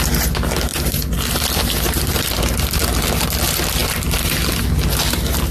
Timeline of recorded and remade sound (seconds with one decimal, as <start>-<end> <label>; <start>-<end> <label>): 0.0-0.7 recorded; 0.7-2.3 remade; 2.3-3.8 recorded; 3.8-4.6 remade; 4.6-5.5 recorded